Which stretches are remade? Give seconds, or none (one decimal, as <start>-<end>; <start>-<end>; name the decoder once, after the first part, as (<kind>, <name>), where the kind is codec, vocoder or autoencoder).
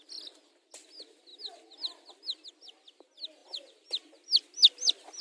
none